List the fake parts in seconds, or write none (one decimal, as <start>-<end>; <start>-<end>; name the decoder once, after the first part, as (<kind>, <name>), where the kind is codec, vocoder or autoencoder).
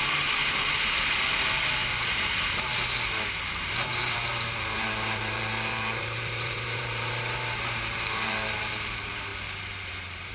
0.0-2.7 (vocoder, BigVGAN v2); 3.4-9.3; 9.9-10.3